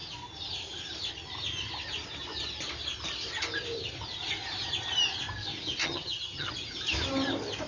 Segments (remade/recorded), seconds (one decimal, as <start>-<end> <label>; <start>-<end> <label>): 0.0-5.8 recorded; 5.8-6.5 remade; 6.5-7.7 recorded

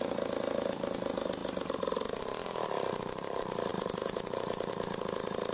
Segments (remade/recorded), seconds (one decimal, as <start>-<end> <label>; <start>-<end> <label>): 0.0-5.5 recorded

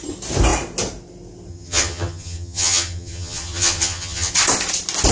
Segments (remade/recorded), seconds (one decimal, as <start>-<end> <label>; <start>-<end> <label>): 0.0-1.5 recorded; 1.5-4.3 remade; 4.3-5.1 recorded

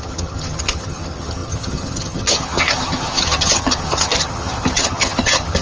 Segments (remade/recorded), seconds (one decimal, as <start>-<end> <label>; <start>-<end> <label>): 0.0-5.6 remade

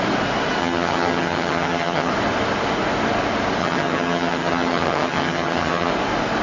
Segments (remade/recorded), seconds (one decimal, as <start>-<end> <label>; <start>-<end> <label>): 0.0-0.6 recorded; 0.6-2.1 remade; 2.1-3.6 recorded; 3.6-5.9 remade; 5.9-6.4 recorded